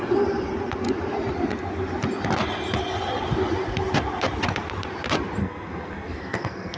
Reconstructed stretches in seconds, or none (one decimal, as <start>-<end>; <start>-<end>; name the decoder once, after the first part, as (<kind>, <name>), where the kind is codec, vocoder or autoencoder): 5.4-6.8 (codec, SNAC)